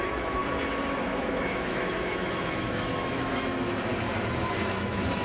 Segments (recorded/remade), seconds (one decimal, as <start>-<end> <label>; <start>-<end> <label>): 0.0-0.4 remade; 0.4-1.0 recorded; 1.0-3.9 remade; 3.9-4.6 recorded; 4.6-5.2 remade